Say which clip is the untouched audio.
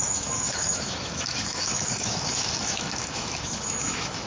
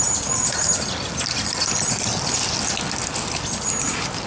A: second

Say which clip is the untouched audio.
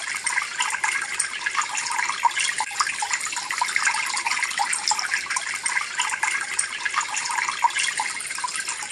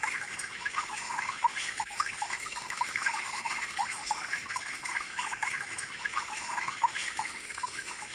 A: first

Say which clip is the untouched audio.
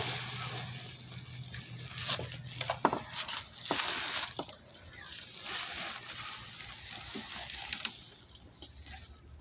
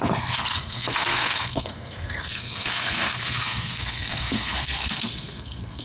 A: first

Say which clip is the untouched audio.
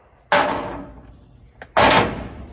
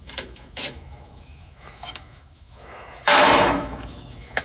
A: first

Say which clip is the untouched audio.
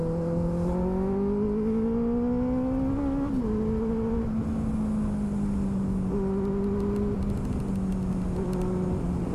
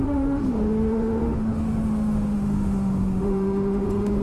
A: first